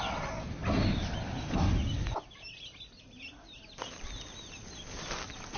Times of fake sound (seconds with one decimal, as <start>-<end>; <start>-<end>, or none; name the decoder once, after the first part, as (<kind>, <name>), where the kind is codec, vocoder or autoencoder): none

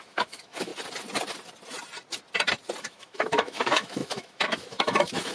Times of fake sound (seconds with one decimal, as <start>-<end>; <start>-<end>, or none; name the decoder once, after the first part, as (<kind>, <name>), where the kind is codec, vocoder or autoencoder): 0.0-0.7 (autoencoder, DAC-VAE); 2.8-5.3

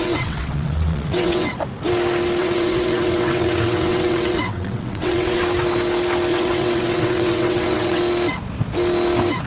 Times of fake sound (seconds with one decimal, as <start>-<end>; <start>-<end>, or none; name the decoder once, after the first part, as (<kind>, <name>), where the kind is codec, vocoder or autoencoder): 0.0-1.5 (vocoder, WaveNeXt); 2.4-5.4; 6.3-8.0

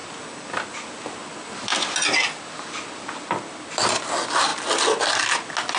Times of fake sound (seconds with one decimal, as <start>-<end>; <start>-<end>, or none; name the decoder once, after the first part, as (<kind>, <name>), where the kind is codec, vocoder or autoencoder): none

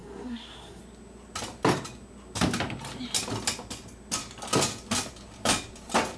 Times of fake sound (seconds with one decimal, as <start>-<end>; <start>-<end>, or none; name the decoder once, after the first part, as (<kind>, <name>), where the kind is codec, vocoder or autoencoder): 0.0-0.8 (codec, SNAC)

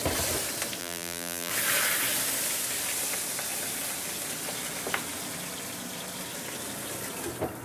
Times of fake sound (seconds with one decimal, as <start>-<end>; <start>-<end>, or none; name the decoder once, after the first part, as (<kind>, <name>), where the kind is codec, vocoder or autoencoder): 0.8-1.5 (vocoder, BigVGAN v2)

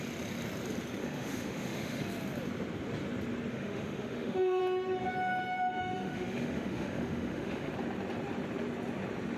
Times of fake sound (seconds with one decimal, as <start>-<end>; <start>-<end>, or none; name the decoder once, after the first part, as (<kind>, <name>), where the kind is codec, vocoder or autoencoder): 1.0-2.0 (autoencoder, DAC-VAE); 3.5-4.6; 5.8-7.7

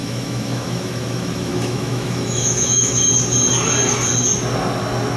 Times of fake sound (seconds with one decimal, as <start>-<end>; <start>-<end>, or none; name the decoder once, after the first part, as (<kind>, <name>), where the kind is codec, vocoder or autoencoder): 0.0-3.1 (autoencoder, DAC-VAE)